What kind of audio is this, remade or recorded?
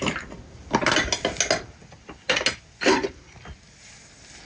recorded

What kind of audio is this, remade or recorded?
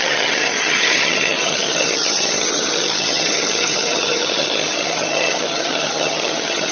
remade